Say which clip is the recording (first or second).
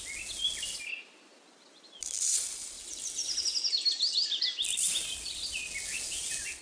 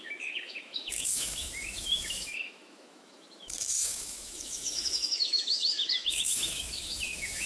first